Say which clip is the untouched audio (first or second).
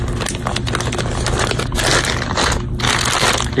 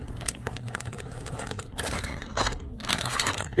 first